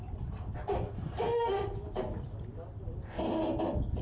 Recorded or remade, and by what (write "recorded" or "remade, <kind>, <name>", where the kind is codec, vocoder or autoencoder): recorded